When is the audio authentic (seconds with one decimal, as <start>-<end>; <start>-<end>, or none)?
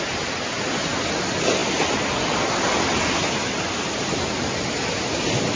0.0-5.6